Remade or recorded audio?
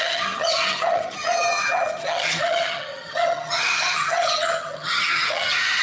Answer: remade